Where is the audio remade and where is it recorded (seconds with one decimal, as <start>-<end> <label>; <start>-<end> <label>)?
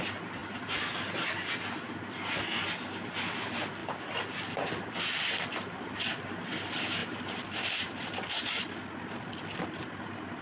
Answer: 0.0-3.8 recorded; 3.8-4.9 remade; 4.9-7.0 recorded; 7.0-8.3 remade; 8.3-10.4 recorded